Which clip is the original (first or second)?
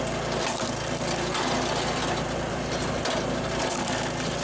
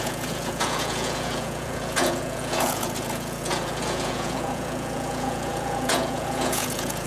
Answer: first